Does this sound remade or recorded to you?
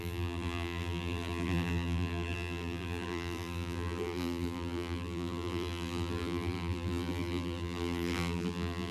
remade